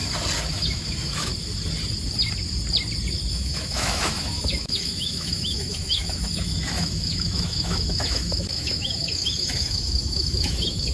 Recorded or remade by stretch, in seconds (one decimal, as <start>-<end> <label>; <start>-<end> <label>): 0.0-0.5 recorded; 0.5-1.3 remade; 1.3-3.3 recorded; 3.3-10.9 remade